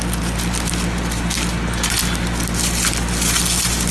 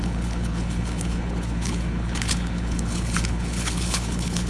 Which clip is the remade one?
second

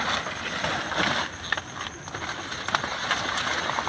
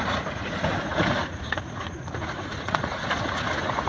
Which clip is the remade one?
second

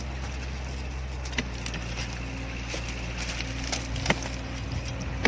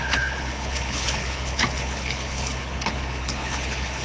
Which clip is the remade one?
second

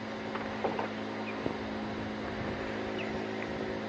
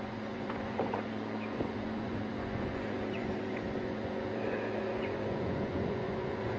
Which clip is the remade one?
second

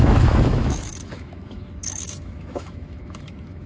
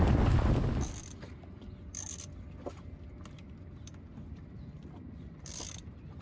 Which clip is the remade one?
first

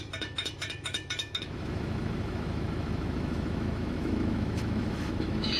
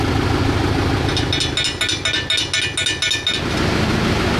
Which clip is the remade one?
first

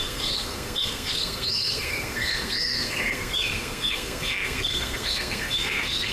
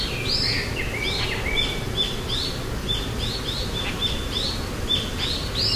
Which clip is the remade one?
first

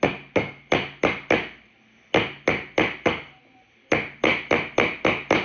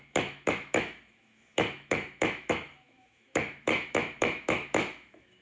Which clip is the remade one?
second